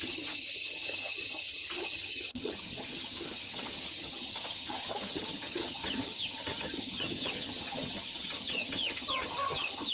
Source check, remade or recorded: remade